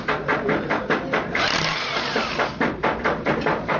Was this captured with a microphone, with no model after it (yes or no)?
yes